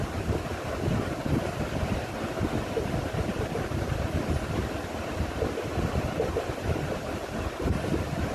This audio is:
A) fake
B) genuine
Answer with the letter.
A